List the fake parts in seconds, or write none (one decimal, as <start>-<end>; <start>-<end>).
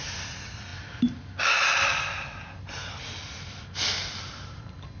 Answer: none